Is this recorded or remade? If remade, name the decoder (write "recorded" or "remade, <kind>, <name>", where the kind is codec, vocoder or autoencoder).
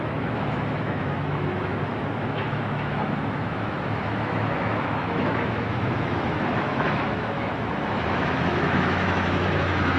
remade, autoencoder, DAC-VAE